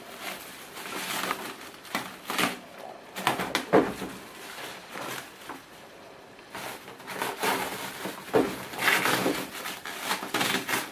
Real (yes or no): yes